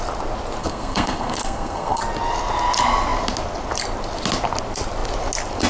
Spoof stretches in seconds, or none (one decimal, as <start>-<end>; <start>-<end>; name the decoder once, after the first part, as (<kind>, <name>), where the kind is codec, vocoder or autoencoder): 0.6-2.0 (codec, SNAC)